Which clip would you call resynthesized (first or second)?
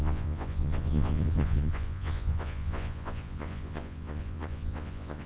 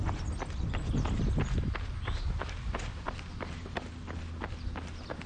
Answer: first